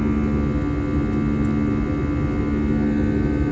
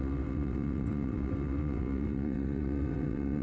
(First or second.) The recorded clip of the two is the first